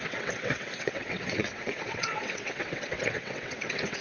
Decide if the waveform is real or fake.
fake